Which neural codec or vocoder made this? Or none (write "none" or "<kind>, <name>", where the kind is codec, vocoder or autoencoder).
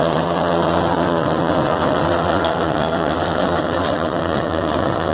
vocoder, WaveNeXt